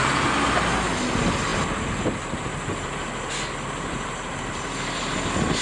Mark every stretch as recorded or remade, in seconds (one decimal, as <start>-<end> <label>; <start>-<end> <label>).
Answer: 0.0-5.6 recorded